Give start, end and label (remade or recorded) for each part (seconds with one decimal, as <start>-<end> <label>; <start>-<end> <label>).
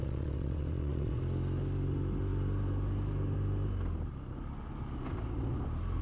0.0-1.2 remade; 1.2-6.0 recorded